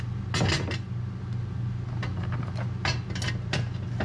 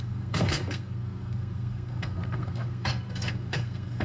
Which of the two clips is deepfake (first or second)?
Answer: second